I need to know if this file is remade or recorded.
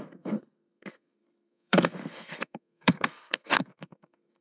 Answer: remade